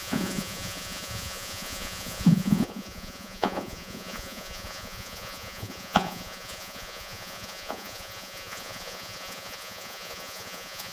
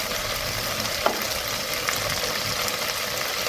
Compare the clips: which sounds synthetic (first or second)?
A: first